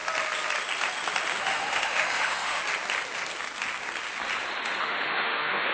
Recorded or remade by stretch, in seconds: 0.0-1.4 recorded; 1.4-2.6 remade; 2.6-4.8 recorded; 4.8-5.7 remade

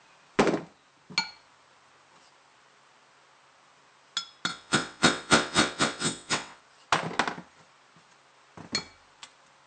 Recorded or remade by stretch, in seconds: 0.0-4.5 recorded; 4.5-6.6 remade; 6.6-9.7 recorded

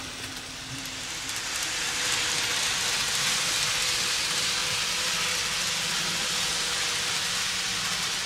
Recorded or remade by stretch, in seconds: 0.0-8.3 recorded

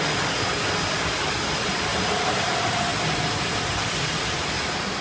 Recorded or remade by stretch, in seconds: 0.0-5.0 recorded

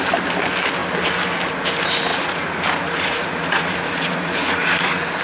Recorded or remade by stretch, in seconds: 0.0-2.1 recorded; 2.1-5.2 remade

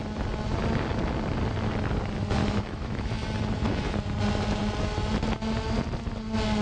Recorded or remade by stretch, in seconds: 0.0-2.4 recorded; 2.4-3.1 remade; 3.1-6.6 recorded